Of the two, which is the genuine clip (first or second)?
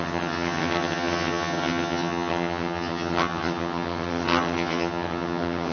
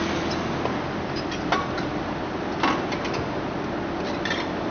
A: second